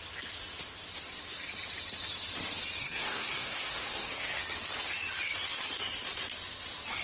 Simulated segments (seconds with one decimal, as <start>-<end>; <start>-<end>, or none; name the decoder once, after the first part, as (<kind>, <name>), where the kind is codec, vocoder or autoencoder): 2.8-4.4 (codec, SNAC)